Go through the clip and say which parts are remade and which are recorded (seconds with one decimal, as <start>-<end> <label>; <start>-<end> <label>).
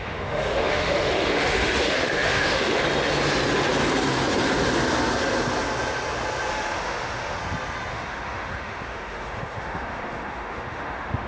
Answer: 0.0-2.8 remade; 2.8-6.5 recorded; 6.5-7.4 remade; 7.4-7.9 recorded; 7.9-11.3 remade